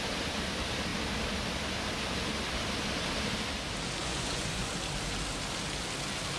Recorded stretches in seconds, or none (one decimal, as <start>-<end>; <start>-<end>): 0.0-4.0; 4.7-6.4